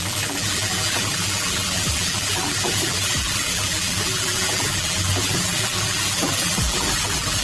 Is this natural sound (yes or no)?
no